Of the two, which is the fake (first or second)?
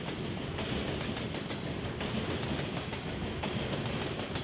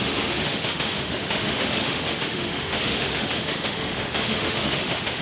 second